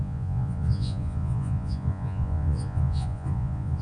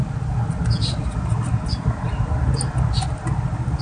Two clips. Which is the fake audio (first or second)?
first